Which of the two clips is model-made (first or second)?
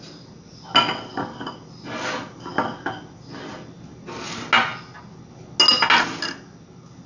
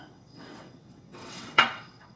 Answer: second